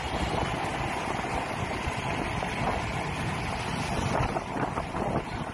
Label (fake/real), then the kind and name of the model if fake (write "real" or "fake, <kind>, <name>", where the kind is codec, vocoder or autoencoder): real